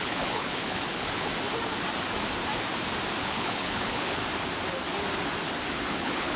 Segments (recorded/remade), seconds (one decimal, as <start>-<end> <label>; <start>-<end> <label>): 0.0-1.3 remade; 1.3-3.2 recorded; 3.2-4.2 remade; 4.2-5.7 recorded; 5.7-6.4 remade